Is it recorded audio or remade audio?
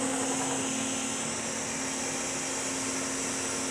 recorded